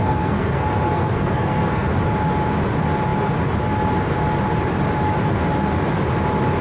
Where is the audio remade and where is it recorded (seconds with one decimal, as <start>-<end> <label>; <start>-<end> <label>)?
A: 0.0-1.9 remade; 1.9-6.6 recorded